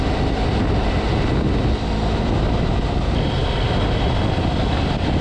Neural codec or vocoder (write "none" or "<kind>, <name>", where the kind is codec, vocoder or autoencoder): none